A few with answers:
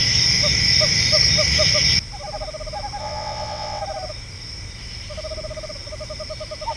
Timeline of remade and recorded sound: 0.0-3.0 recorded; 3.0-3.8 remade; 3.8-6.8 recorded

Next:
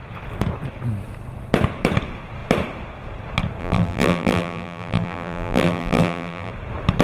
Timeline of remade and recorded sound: 0.0-3.6 recorded; 3.6-6.5 remade; 6.5-7.0 recorded

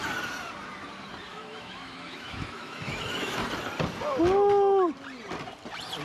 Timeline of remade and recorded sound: 0.0-1.3 recorded; 1.3-3.4 remade; 3.4-6.0 recorded

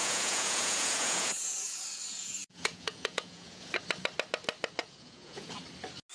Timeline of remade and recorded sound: 0.0-3.7 remade; 3.7-4.8 recorded; 4.8-5.6 remade; 5.6-6.1 recorded

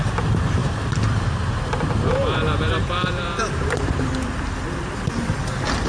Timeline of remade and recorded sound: 0.0-0.6 recorded; 0.6-4.1 remade; 4.1-5.9 recorded

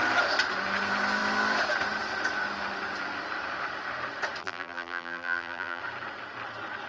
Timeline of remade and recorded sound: 0.0-4.4 recorded; 4.4-5.8 remade; 5.8-6.9 recorded